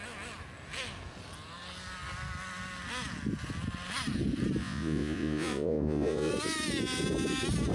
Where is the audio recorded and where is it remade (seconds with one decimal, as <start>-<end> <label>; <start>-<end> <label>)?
0.0-4.6 recorded; 4.6-6.3 remade; 6.3-7.7 recorded